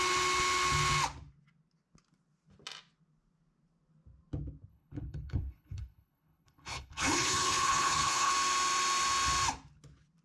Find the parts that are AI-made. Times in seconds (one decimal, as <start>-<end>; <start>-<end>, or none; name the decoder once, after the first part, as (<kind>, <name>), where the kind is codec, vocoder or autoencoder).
4.7-8.3 (codec, HILCodec)